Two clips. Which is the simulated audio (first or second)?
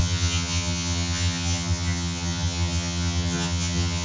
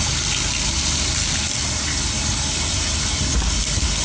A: first